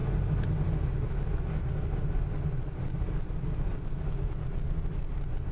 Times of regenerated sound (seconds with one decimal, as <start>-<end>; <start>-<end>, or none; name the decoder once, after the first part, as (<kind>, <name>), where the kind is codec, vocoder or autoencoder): none